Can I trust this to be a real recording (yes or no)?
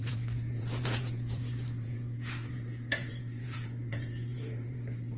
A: no